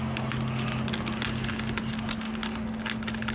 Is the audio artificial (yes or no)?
no